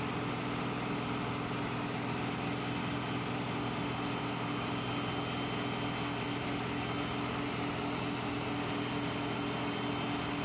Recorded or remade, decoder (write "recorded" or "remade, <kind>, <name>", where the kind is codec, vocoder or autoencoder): recorded